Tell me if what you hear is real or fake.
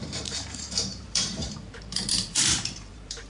fake